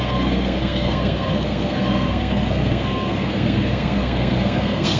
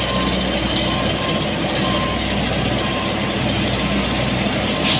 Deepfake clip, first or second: first